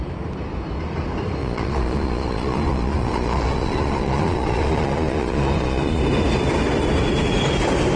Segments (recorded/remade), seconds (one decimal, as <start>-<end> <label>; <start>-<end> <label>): 0.0-1.4 recorded; 1.4-6.0 remade; 6.0-8.0 recorded